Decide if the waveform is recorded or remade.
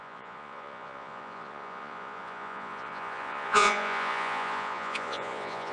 remade